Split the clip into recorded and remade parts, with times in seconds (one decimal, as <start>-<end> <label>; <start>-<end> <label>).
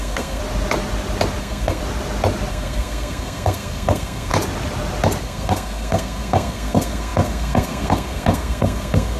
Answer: 0.0-0.4 remade; 0.4-1.4 recorded; 1.4-1.8 remade; 1.8-2.5 recorded; 2.5-4.3 remade; 4.3-5.2 recorded; 5.2-9.2 remade